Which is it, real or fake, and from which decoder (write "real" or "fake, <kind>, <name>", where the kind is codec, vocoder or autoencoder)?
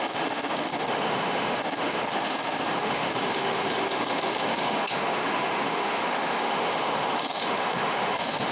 fake, autoencoder, DAC-VAE